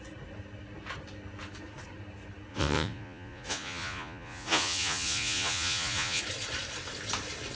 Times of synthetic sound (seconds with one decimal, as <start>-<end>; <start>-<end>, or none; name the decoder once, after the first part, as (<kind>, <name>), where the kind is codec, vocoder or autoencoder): 2.5-6.2 (vocoder, Vocos)